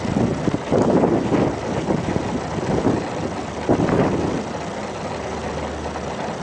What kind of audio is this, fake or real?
real